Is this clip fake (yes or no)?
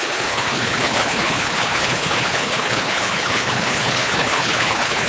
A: yes